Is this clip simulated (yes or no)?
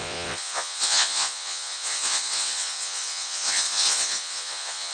yes